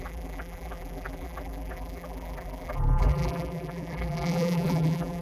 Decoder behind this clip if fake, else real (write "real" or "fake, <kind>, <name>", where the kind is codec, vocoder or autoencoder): fake, vocoder, BigVGAN v2